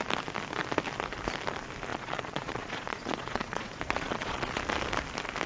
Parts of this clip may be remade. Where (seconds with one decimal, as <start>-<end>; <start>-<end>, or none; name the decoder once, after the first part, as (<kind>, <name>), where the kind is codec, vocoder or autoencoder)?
1.9-4.6 (vocoder, Vocos)